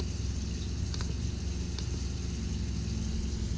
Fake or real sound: real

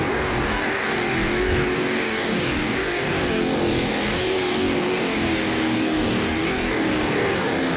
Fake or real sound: fake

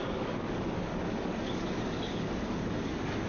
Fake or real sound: fake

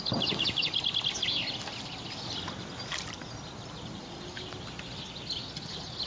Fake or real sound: real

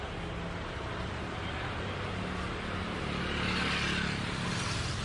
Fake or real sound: real